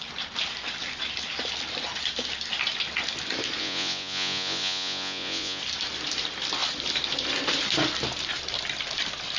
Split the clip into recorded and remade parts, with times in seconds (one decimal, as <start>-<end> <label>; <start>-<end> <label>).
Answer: 0.0-3.6 recorded; 3.6-5.6 remade; 5.6-9.4 recorded